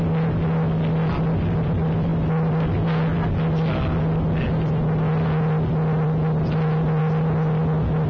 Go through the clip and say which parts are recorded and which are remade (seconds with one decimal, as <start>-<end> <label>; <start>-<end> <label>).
0.0-8.1 recorded